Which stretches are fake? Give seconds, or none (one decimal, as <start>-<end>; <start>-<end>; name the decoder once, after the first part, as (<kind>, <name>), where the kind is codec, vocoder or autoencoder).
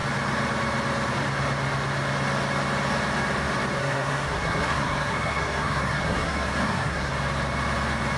3.8-7.1 (codec, SNAC)